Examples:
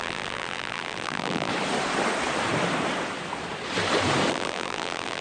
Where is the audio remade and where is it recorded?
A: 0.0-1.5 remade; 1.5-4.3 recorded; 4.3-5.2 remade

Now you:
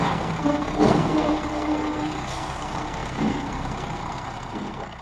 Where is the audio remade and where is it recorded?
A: 0.0-5.0 remade

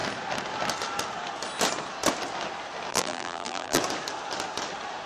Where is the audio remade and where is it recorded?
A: 0.0-2.9 recorded; 2.9-3.8 remade; 3.8-5.1 recorded

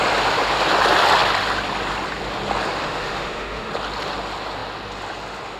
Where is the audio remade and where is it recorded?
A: 0.0-2.8 recorded; 2.8-3.7 remade; 3.7-5.6 recorded

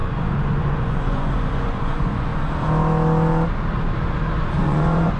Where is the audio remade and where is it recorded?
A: 0.0-2.3 remade; 2.3-4.4 recorded; 4.4-5.2 remade